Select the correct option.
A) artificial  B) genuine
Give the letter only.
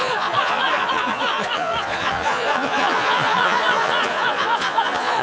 A